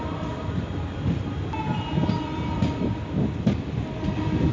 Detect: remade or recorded recorded